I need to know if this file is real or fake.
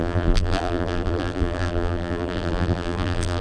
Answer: fake